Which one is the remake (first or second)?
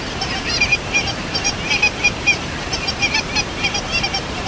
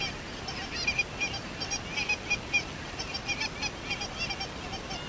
first